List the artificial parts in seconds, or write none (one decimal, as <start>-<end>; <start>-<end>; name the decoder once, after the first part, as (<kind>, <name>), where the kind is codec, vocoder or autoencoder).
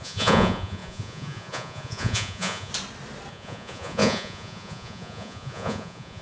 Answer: 0.0-2.7 (vocoder, Vocos); 3.3-6.2